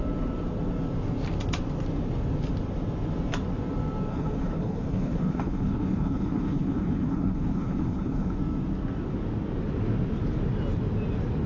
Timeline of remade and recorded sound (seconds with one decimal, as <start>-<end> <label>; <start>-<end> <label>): 0.0-4.1 recorded; 4.1-8.4 remade; 8.4-11.5 recorded